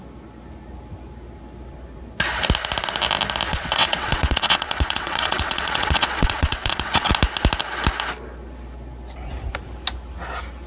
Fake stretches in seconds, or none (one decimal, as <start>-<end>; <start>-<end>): 3.5-7.1